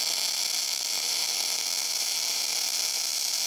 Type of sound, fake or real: fake